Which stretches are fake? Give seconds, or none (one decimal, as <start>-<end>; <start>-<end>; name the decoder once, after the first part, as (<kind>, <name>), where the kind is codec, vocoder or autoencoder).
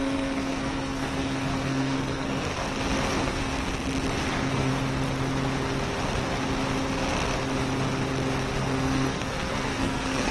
0.0-2.5 (codec, SNAC); 3.1-3.5; 4.3-4.7; 8.6-10.3